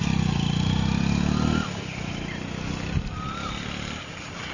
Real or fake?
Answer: real